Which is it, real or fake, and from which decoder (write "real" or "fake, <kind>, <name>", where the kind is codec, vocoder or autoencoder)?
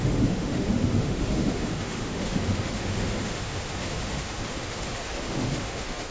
fake, autoencoder, DAC-VAE